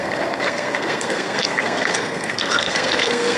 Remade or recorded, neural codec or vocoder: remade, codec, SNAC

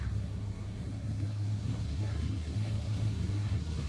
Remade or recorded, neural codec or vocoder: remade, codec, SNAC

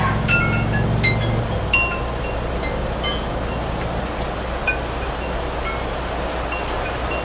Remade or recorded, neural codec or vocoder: recorded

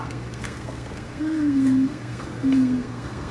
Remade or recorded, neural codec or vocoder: remade, codec, SNAC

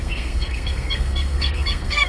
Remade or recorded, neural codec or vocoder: remade, codec, SNAC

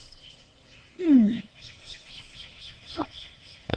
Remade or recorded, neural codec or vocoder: remade, codec, SNAC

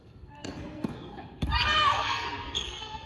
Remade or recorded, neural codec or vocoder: remade, codec, SNAC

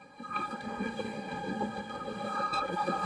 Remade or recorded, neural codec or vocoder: remade, codec, SNAC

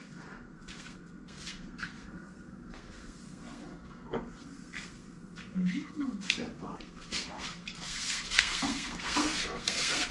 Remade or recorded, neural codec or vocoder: remade, codec, SNAC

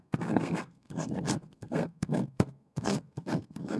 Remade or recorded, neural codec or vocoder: remade, codec, SNAC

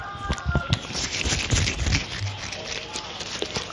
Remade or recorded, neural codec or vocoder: recorded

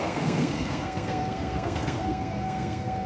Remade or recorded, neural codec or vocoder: remade, codec, SNAC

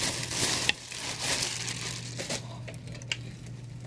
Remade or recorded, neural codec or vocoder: recorded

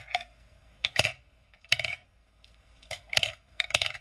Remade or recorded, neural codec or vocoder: remade, codec, SNAC